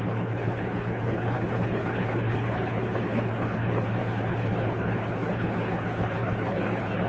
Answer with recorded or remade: remade